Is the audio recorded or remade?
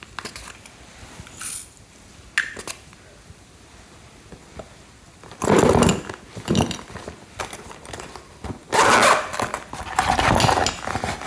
recorded